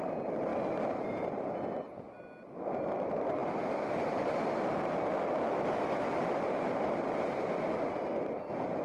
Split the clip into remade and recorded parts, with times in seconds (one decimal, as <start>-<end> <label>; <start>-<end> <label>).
0.0-8.8 recorded